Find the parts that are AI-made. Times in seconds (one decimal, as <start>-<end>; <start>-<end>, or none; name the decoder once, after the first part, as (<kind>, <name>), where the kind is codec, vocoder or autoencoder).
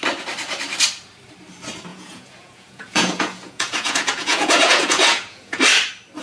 1.9-5.6 (vocoder, Vocos)